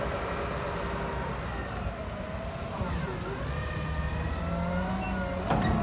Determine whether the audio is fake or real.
real